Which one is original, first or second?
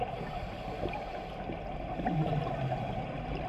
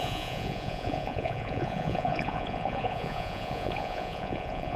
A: first